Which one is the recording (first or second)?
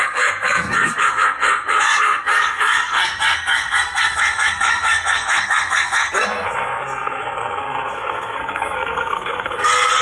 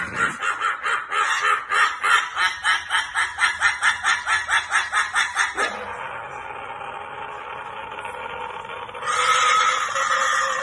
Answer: second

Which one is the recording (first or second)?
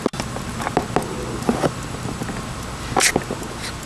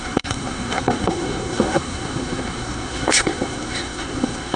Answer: first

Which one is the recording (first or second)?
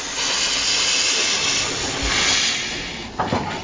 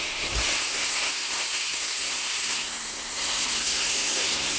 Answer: first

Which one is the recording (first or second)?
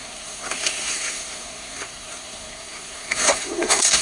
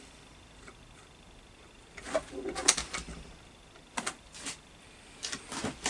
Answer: second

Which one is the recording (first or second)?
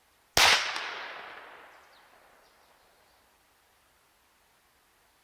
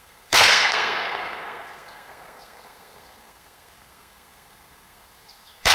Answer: first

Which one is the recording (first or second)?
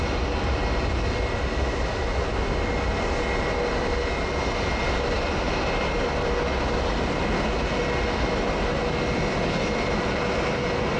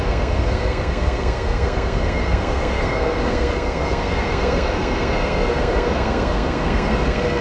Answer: first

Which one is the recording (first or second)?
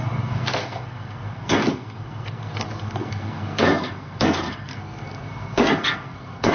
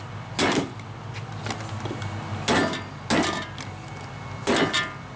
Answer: second